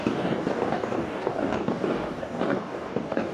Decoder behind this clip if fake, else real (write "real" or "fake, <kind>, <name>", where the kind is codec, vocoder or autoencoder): fake, codec, DAC